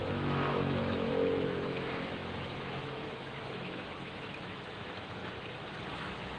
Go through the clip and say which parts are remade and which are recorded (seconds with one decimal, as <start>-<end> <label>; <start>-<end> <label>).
0.0-5.2 remade; 5.2-5.9 recorded; 5.9-6.4 remade